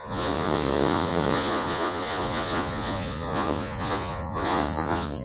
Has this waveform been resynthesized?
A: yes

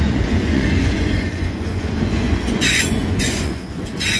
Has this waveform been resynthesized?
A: yes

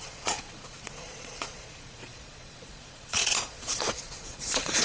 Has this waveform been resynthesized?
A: yes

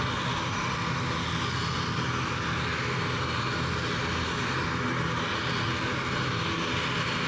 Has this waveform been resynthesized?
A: no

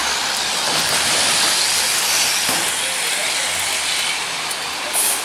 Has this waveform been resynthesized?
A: no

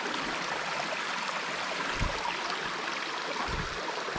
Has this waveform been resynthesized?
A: no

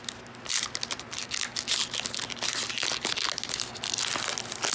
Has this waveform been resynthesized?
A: no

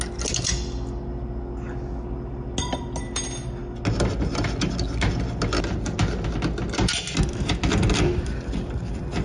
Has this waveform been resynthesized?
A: no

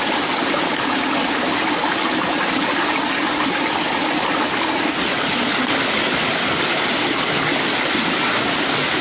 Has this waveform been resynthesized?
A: no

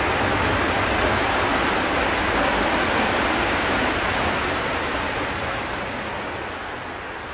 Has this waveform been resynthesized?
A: no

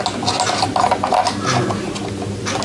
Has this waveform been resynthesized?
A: no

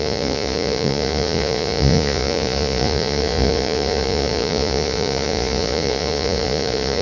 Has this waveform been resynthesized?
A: yes